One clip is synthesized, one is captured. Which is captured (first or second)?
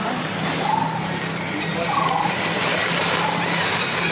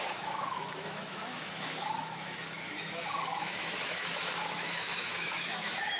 first